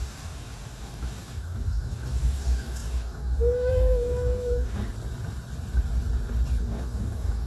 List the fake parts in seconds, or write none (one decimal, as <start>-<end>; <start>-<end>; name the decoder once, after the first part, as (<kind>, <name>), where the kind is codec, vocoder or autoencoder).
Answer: 0.0-4.8 (codec, DAC); 6.6-7.5